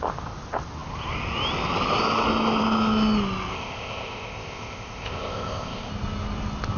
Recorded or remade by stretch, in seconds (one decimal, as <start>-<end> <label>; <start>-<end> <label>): 0.0-3.5 recorded; 3.5-5.9 remade; 5.9-6.8 recorded